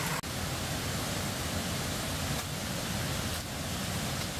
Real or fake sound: real